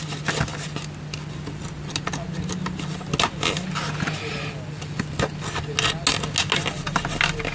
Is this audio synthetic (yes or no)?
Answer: no